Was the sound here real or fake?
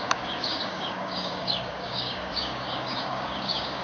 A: fake